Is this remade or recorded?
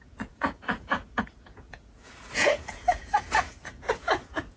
remade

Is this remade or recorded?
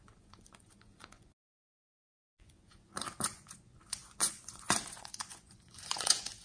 remade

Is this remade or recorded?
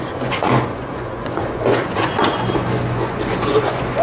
remade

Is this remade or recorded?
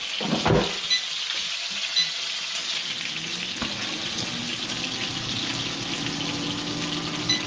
recorded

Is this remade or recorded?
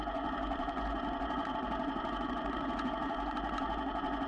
remade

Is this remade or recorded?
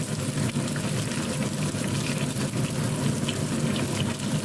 recorded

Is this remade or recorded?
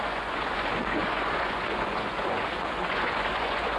remade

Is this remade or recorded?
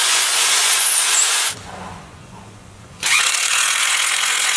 remade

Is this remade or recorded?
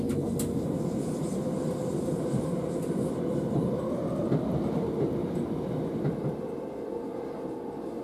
recorded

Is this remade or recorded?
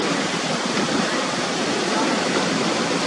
recorded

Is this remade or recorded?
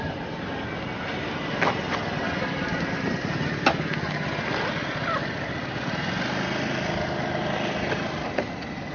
recorded